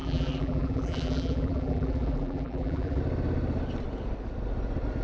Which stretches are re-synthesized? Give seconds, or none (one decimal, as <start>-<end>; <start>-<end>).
0.0-3.0